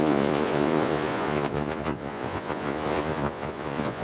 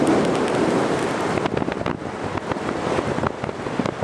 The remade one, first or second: first